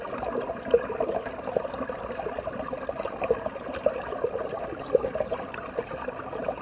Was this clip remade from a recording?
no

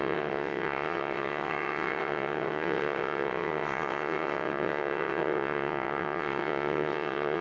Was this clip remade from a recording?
yes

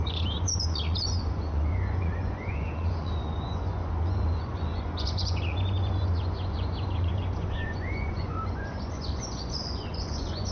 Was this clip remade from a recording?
yes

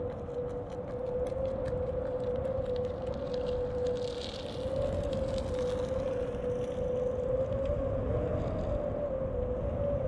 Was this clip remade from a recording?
no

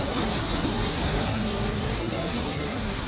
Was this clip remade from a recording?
yes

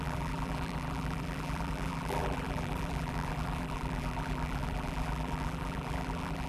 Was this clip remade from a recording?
yes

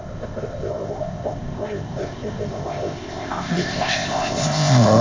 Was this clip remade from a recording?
yes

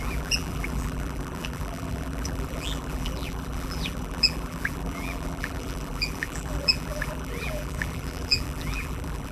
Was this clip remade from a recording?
yes